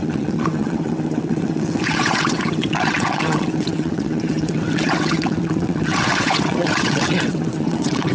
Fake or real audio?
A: fake